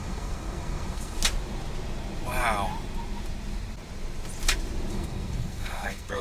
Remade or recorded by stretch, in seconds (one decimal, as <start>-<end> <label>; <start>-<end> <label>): 0.0-1.2 remade; 1.2-4.9 recorded; 4.9-6.2 remade